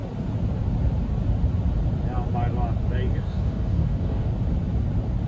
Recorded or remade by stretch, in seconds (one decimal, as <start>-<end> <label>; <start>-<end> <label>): 0.0-3.2 recorded; 3.2-4.3 remade; 4.3-5.3 recorded